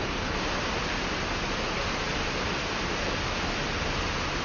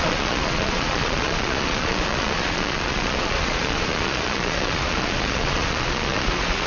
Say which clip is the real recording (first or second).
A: first